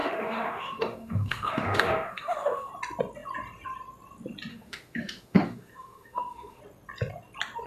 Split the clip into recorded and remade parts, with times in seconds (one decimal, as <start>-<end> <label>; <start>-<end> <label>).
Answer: 0.0-2.7 remade; 2.7-4.5 recorded; 4.5-6.6 remade; 6.6-7.7 recorded